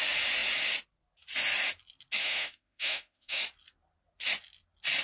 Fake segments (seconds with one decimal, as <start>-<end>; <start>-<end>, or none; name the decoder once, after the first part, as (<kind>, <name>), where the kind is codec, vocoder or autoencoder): 2.2-3.4 (autoencoder, DAC-VAE)